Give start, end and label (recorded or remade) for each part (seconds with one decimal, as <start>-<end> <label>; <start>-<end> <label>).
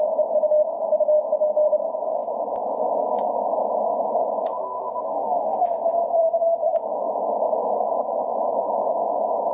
0.0-2.2 recorded; 2.2-3.3 remade; 3.3-5.5 recorded; 5.5-7.4 remade; 7.4-8.3 recorded; 8.3-8.9 remade; 8.9-9.5 recorded